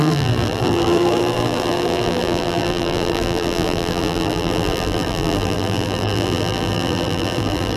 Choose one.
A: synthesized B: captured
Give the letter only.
A